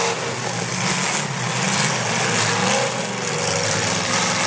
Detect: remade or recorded recorded